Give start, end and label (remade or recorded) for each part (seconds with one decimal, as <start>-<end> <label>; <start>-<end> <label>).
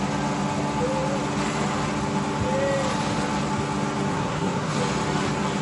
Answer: 0.0-4.1 recorded; 4.1-4.8 remade; 4.8-5.6 recorded